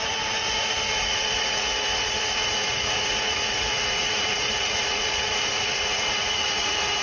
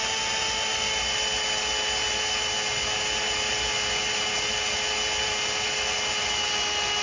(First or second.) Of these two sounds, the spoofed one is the first